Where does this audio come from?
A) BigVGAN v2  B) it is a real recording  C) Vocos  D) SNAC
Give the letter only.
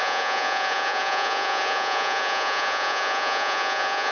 C